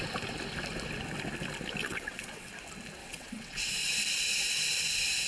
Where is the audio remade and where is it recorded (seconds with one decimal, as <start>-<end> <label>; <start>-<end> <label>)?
0.0-1.8 recorded; 1.8-2.5 remade; 2.5-3.0 recorded; 3.0-3.7 remade; 3.7-5.3 recorded